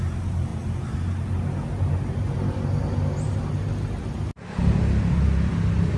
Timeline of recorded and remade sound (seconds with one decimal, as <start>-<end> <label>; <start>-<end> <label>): 0.0-6.0 recorded